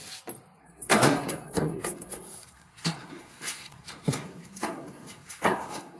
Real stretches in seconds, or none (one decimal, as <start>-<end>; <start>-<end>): 0.0-0.6